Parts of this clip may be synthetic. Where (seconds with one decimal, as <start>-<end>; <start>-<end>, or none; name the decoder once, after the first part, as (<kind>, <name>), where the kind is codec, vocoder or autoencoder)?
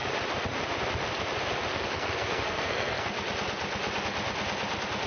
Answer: 1.7-3.1 (codec, SNAC)